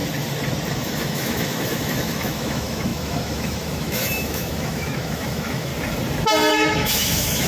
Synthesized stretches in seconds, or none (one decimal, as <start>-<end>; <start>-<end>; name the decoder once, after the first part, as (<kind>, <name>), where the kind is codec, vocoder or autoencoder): 0.7-5.7 (autoencoder, DAC-VAE); 6.5-7.5